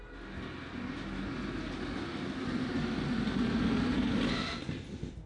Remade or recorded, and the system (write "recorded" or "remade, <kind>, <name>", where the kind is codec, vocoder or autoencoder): recorded